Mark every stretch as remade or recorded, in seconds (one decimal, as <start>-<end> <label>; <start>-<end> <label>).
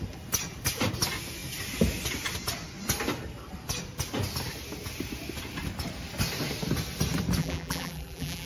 0.0-7.4 recorded; 7.4-8.5 remade